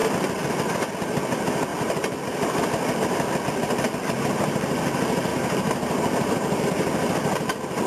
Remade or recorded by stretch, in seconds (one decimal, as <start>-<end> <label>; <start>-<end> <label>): 0.0-1.7 recorded; 1.7-3.4 remade; 3.4-5.3 recorded; 5.3-6.6 remade; 6.6-7.9 recorded